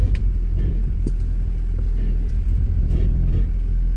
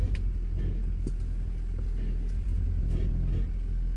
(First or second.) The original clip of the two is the second